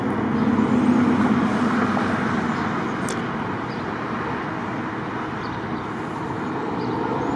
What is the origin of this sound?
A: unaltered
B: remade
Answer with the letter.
A